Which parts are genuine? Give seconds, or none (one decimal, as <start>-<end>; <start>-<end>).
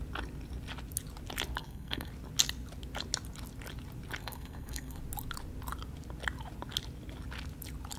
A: 0.0-1.6; 2.1-4.2; 5.0-8.0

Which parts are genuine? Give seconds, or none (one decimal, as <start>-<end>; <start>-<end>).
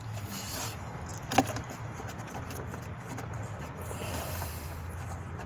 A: 0.0-5.5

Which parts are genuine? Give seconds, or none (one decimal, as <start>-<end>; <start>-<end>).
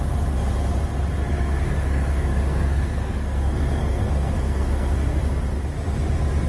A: 0.0-1.3; 5.2-6.5